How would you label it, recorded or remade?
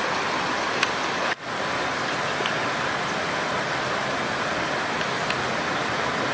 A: recorded